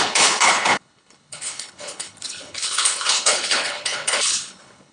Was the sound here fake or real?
fake